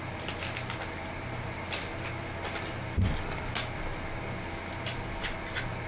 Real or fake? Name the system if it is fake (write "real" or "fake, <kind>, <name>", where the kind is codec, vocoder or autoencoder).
real